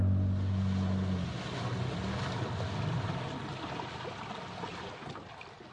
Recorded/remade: recorded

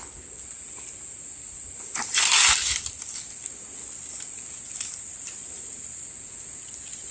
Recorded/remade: recorded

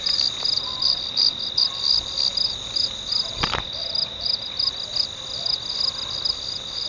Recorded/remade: recorded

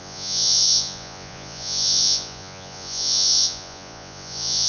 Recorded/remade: remade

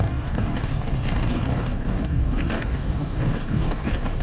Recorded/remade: remade